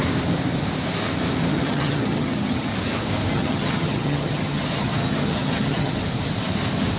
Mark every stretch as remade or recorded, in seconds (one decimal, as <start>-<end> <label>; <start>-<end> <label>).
0.0-1.5 recorded; 1.5-2.7 remade; 2.7-3.3 recorded; 3.3-6.0 remade; 6.0-7.0 recorded